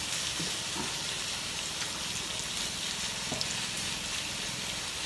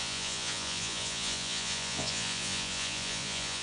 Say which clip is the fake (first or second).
second